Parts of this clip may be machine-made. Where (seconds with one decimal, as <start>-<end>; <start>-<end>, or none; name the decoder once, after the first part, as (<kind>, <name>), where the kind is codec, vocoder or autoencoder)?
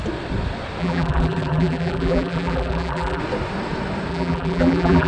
0.8-3.2 (vocoder, BigVGAN v2); 4.1-5.1